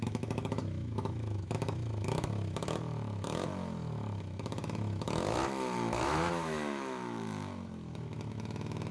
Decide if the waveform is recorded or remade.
remade